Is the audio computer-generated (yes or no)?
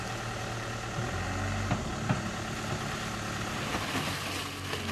no